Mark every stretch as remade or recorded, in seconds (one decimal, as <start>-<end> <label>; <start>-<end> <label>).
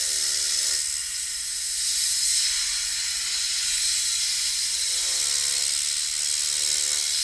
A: 0.0-1.0 recorded; 1.0-5.2 remade; 5.2-7.2 recorded